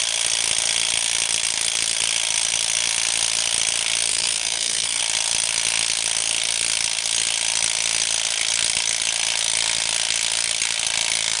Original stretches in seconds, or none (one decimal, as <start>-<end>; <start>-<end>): 0.0-4.1; 5.0-11.4